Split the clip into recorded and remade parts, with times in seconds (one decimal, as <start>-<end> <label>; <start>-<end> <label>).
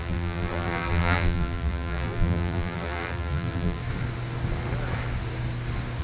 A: 0.0-3.8 remade; 3.8-6.0 recorded